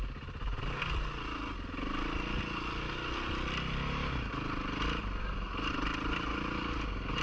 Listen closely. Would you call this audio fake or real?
real